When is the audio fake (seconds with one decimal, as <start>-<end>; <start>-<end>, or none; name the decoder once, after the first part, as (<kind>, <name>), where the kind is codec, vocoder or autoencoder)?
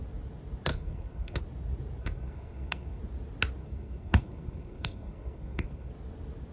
0.7-1.4 (codec, SNAC); 2.0-3.0; 3.6-5.9